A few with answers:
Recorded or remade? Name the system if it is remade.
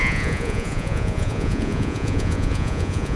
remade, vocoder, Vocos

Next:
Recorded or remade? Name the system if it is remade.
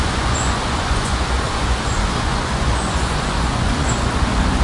remade, vocoder, Vocos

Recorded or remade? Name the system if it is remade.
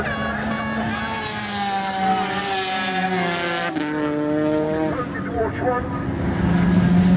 recorded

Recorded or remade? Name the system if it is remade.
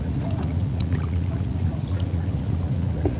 remade, vocoder, Vocos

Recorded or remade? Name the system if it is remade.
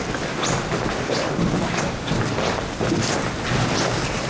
recorded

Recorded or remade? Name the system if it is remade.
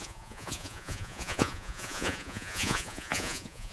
remade, vocoder, Vocos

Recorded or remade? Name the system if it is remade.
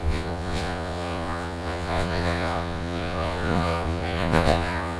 remade, vocoder, Vocos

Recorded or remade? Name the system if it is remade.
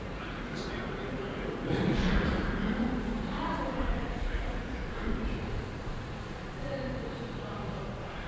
remade, vocoder, Vocos